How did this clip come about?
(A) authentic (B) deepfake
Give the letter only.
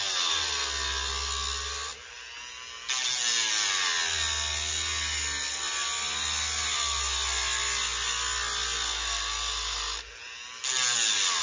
A